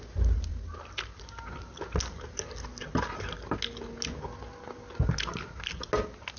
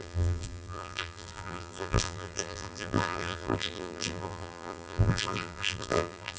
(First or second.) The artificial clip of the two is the second